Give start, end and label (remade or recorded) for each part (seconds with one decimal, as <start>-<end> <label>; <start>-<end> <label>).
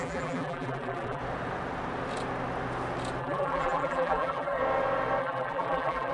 0.0-1.2 remade; 1.2-3.2 recorded; 3.2-4.6 remade; 4.6-5.2 recorded; 5.2-6.1 remade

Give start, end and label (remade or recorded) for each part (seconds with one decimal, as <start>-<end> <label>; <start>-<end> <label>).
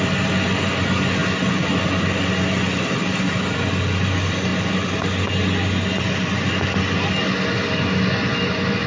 0.0-8.9 recorded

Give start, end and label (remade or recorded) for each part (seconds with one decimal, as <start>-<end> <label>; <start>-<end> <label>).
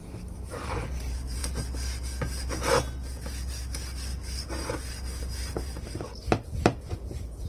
0.0-0.5 recorded; 0.5-1.4 remade; 1.4-5.9 recorded; 5.9-7.5 remade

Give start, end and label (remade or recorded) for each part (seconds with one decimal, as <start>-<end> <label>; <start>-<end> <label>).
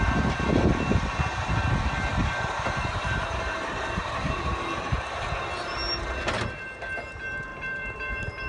0.0-2.1 recorded; 2.1-5.1 remade; 5.1-7.5 recorded; 7.5-8.5 remade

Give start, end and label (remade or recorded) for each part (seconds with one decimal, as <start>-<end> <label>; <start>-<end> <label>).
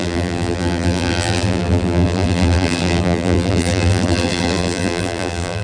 0.0-5.6 remade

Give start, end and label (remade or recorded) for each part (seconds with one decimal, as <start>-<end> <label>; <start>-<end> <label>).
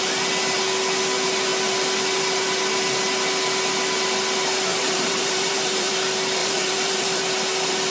0.0-4.7 recorded; 4.7-5.9 remade; 5.9-6.4 recorded; 6.4-7.2 remade; 7.2-7.9 recorded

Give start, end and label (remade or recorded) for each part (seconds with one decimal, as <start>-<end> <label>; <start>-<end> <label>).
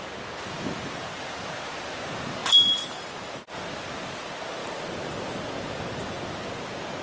0.0-4.6 recorded; 4.6-6.2 remade; 6.2-7.0 recorded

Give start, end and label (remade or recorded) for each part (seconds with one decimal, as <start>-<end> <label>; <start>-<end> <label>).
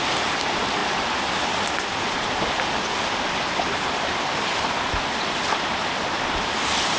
0.0-7.0 recorded